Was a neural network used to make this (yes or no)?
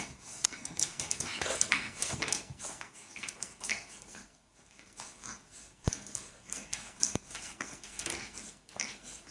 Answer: yes